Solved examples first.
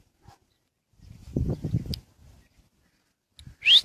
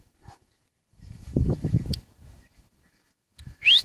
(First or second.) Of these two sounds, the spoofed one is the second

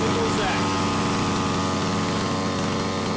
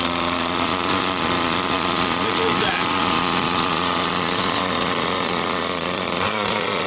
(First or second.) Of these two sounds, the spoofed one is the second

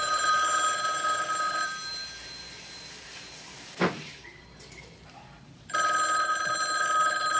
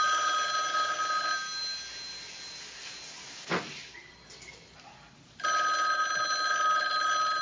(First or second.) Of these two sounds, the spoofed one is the first